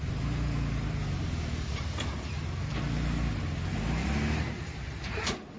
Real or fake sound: real